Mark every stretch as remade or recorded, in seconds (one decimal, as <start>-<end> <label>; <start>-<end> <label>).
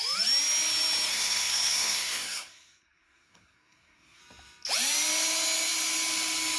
0.0-1.1 recorded; 1.1-4.2 remade; 4.2-6.6 recorded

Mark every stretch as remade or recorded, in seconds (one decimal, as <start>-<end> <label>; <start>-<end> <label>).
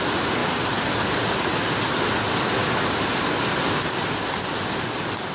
0.0-5.3 recorded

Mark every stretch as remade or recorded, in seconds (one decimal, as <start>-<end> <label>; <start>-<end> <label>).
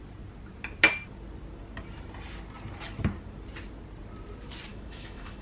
0.0-4.7 recorded; 4.7-5.4 remade